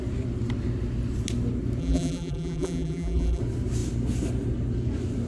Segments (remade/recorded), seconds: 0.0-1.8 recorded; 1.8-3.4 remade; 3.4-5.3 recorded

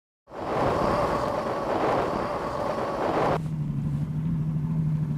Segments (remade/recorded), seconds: 0.0-5.2 recorded

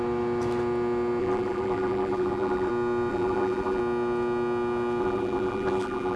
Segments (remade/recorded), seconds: 0.0-1.2 recorded; 1.2-2.7 remade; 2.7-3.1 recorded; 3.1-3.8 remade; 3.8-5.0 recorded; 5.0-6.2 remade

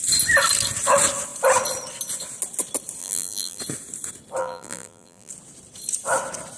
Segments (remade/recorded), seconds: 0.0-3.0 recorded; 3.0-3.6 remade; 3.6-4.4 recorded; 4.4-5.3 remade; 5.3-6.6 recorded